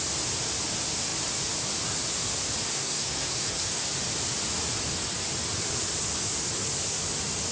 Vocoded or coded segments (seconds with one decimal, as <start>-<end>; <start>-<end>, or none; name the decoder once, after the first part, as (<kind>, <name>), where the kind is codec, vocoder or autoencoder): 2.7-3.8 (codec, SNAC)